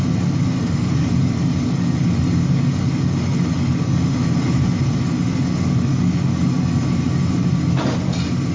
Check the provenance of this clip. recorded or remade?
recorded